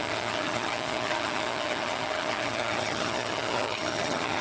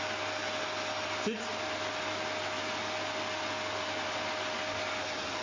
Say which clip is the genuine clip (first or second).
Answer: second